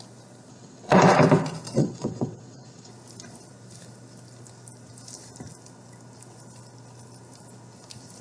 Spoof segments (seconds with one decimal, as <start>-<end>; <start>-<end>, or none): 0.5-1.0; 1.8-2.9